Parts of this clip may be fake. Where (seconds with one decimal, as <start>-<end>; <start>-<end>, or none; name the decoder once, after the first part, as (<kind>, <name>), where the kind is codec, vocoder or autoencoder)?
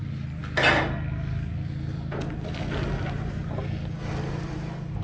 none